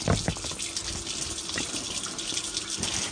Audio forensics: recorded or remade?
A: recorded